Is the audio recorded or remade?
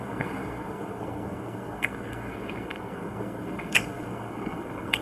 remade